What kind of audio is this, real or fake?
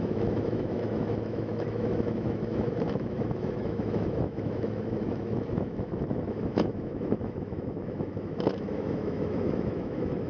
fake